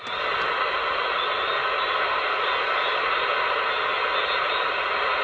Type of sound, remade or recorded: recorded